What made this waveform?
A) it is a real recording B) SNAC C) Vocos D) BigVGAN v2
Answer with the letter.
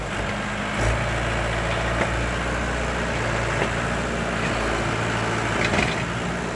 A